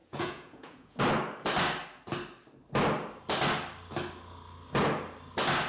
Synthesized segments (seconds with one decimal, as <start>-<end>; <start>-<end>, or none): 0.0-1.0